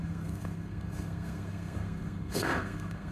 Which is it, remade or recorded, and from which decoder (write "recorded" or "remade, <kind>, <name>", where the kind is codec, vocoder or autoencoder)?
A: remade, codec, SNAC